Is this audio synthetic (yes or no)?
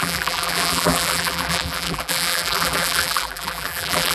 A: yes